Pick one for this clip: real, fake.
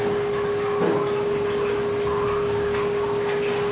real